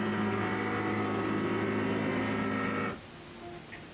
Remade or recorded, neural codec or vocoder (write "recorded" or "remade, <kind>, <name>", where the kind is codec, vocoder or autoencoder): recorded